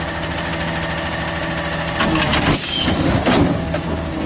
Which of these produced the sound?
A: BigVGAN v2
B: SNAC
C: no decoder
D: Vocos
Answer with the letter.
C